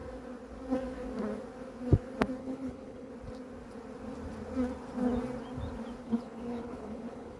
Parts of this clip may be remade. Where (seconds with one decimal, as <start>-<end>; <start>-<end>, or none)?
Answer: 2.4-3.1; 6.0-7.4

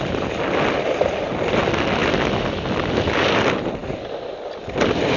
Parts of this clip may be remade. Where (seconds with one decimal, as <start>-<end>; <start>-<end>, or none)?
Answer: none

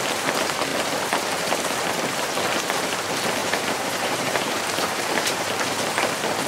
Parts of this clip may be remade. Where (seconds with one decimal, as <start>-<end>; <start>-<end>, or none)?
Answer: 3.4-5.4

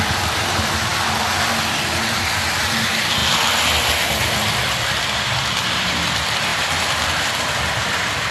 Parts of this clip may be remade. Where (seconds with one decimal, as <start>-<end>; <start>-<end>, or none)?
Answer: 0.0-0.9; 2.6-3.2; 5.0-8.3

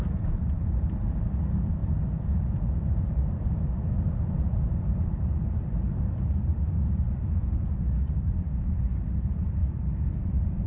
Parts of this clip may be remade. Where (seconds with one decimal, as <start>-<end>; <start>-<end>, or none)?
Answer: 0.0-10.7

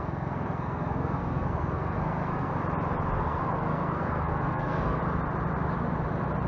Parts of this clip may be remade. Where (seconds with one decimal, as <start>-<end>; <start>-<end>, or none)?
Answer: 0.0-2.5; 3.2-5.0

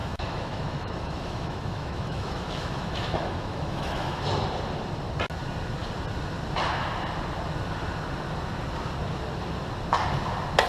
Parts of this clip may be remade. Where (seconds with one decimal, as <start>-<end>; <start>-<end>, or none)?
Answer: 0.0-4.2